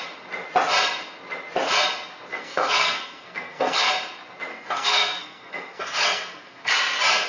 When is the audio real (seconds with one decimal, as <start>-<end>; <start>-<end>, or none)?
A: 0.0-2.3; 3.9-4.5; 6.7-7.3